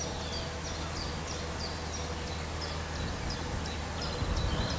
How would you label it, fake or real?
real